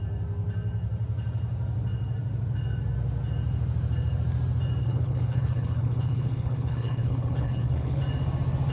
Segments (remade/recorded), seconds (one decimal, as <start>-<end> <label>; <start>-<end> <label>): 0.0-4.8 recorded; 4.8-8.0 remade; 8.0-8.7 recorded